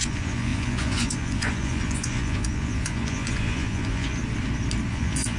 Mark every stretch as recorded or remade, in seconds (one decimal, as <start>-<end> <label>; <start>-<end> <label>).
0.0-4.2 remade; 4.2-4.9 recorded; 4.9-5.4 remade